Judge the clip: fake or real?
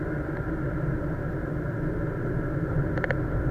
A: real